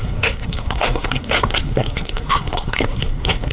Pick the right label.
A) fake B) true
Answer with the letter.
A